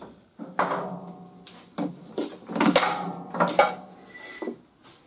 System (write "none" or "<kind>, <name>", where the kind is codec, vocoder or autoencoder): none